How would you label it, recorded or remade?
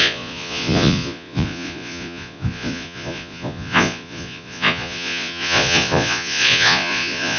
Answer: remade